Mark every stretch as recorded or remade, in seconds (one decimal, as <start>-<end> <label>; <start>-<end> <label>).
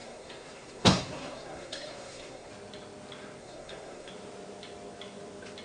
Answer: 0.0-2.5 remade; 2.5-3.4 recorded; 3.4-4.1 remade; 4.1-5.6 recorded